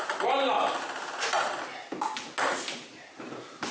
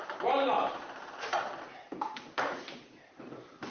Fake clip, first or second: second